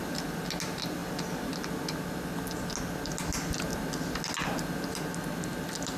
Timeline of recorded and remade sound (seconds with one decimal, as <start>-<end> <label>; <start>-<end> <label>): 0.0-6.0 recorded